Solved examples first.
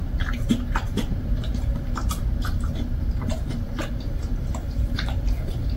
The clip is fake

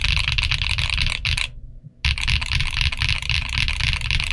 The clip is real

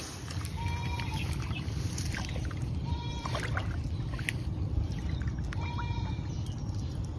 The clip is real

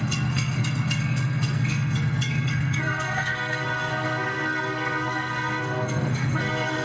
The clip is fake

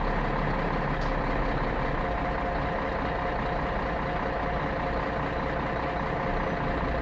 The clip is real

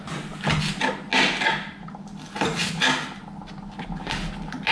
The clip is real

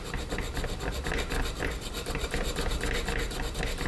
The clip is real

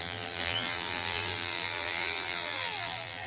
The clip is fake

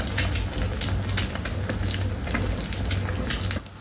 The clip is real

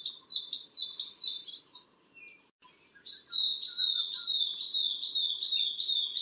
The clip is real